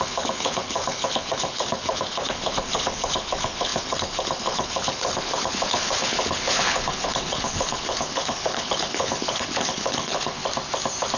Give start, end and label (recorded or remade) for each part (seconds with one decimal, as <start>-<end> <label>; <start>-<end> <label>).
0.0-10.4 remade; 10.4-11.2 recorded